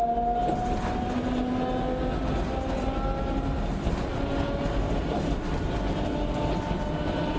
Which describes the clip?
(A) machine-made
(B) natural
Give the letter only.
B